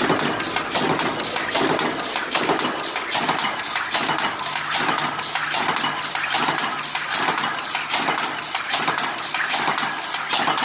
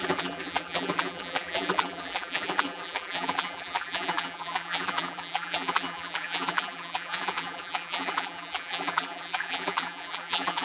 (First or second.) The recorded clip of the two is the first